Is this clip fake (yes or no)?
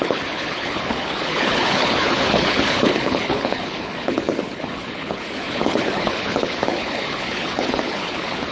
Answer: yes